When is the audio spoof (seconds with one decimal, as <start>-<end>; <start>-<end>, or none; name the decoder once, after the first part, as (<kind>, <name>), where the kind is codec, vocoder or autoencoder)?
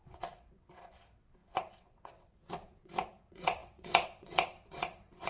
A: 0.0-5.3 (vocoder, WaveNeXt)